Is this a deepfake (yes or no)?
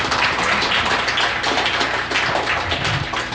no